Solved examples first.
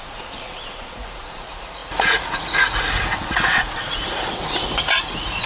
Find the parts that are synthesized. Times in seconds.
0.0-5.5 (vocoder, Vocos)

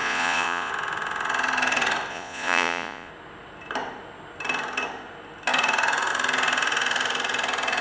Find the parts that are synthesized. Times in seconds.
0.0-0.7 (vocoder, Vocos); 2.1-3.1

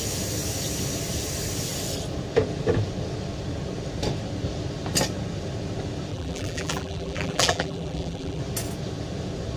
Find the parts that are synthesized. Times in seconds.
6.1-8.4 (vocoder, BigVGAN v2)

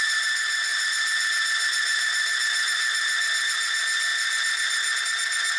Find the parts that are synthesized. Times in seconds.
0.7-1.3 (vocoder, BigVGAN v2); 4.1-5.0

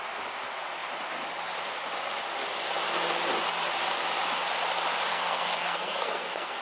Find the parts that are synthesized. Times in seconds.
5.1-6.6 (codec, SNAC)